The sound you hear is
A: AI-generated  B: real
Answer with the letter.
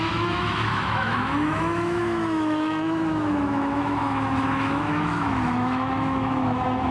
A